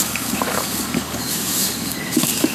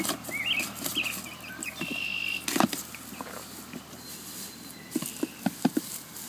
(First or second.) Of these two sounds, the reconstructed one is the first